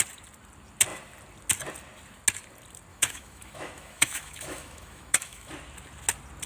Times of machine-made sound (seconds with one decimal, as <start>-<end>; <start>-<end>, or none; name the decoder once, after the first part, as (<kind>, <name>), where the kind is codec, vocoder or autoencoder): 2.9-5.5 (autoencoder, DAC-VAE)